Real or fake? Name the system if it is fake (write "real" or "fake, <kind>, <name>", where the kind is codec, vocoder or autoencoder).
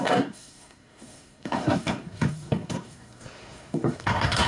fake, codec, SNAC